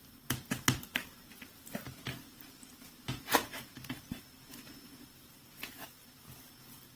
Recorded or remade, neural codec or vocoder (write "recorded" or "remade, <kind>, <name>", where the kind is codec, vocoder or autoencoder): recorded